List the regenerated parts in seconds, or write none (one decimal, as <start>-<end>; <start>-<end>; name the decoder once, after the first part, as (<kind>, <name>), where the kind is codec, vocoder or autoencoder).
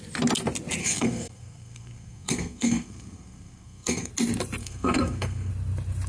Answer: 0.8-4.1 (codec, SNAC); 4.6-5.5